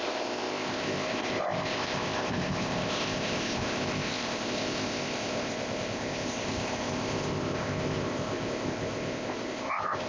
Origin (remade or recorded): remade